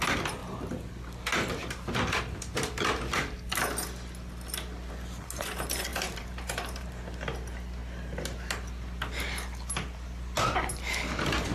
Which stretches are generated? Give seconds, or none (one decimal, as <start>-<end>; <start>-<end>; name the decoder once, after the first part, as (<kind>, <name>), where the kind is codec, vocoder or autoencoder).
5.9-7.0 (vocoder, BigVGAN v2)